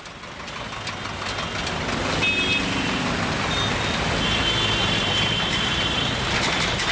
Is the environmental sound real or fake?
real